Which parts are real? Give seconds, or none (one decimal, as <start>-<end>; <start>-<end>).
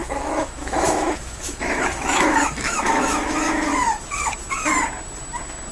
3.7-5.7